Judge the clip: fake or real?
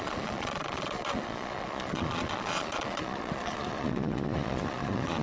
fake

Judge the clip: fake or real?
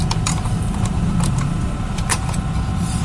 fake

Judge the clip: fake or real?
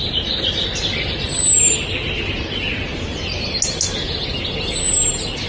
real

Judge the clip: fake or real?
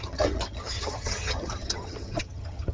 fake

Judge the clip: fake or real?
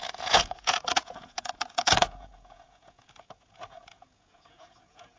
fake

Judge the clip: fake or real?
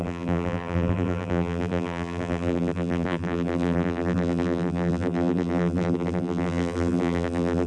fake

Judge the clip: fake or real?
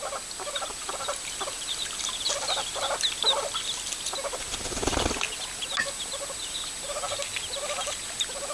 real